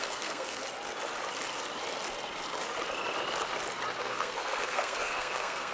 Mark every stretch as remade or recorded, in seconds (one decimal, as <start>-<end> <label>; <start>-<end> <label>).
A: 0.0-0.6 remade; 0.6-4.0 recorded; 4.0-5.7 remade